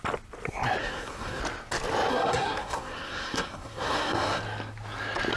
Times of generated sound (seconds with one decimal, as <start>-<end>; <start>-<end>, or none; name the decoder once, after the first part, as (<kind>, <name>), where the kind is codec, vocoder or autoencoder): 0.8-1.4 (codec, SNAC); 2.1-4.4